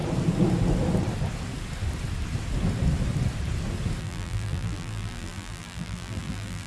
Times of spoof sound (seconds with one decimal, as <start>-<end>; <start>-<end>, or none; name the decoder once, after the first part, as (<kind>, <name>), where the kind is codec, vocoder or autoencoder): 4.0-6.7 (vocoder, BigVGAN v2)